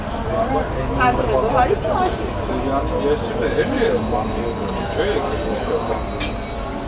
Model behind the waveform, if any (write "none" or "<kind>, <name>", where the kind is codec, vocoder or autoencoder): none